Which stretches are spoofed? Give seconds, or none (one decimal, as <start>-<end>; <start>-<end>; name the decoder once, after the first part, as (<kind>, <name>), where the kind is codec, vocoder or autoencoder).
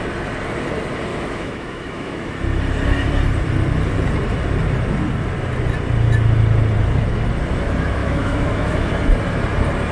1.1-2.3 (autoencoder, DAC-VAE); 8.0-8.9